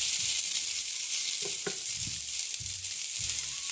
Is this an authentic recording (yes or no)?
yes